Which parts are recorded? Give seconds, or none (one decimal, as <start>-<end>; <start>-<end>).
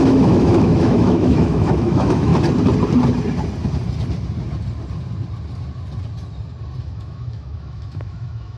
2.3-6.8